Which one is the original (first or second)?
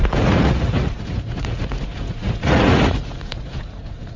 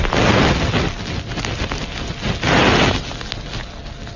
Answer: second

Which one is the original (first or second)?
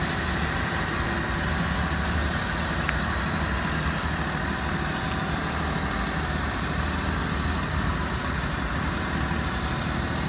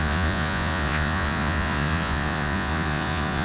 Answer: first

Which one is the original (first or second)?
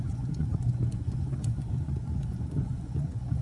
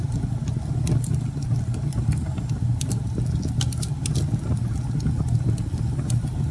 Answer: second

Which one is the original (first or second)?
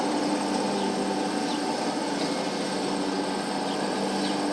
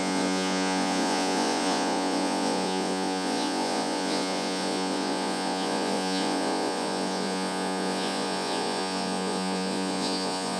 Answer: first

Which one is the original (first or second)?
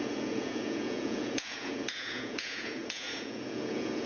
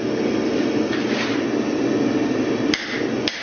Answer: second